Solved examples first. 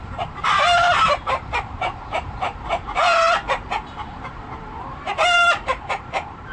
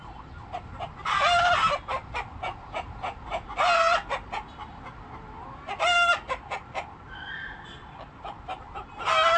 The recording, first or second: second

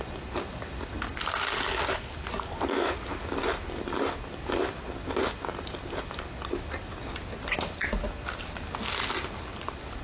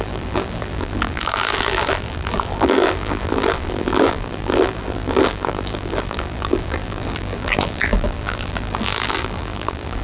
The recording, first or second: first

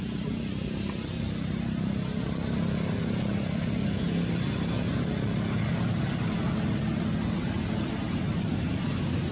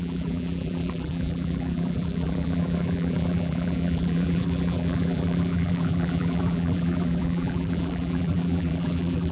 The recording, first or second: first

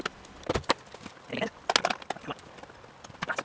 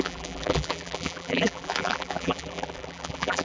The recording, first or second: first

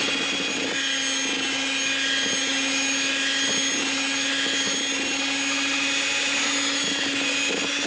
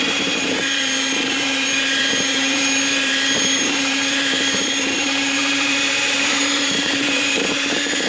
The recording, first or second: first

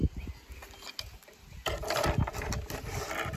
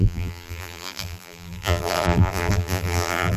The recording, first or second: first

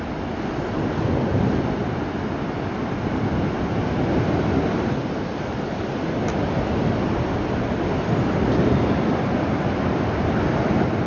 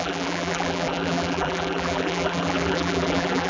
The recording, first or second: first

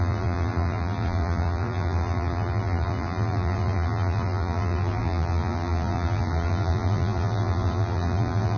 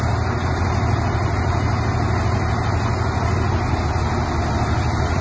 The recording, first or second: second